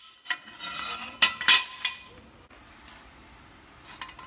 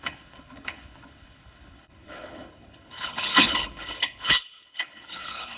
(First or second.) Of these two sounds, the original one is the first